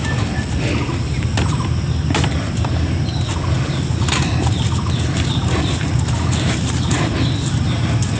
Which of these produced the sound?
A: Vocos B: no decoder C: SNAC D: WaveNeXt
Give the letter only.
B